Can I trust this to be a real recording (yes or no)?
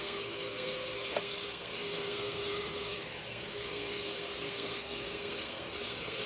no